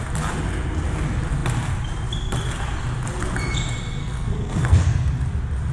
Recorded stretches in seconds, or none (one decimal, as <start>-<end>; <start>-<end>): 0.0-4.0; 5.1-5.7